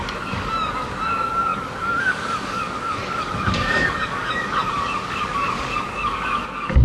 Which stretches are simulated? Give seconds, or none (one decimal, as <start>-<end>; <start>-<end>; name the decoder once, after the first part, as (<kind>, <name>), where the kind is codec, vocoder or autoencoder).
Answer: 0.0-6.8 (codec, DAC)